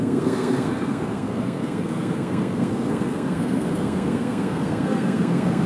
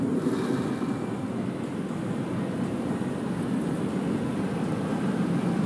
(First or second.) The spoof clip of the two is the first